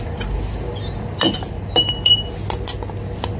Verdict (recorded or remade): recorded